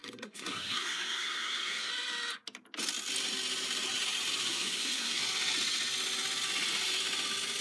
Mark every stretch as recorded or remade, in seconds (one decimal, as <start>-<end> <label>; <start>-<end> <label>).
0.0-1.9 remade; 1.9-4.5 recorded; 4.5-5.2 remade; 5.2-7.6 recorded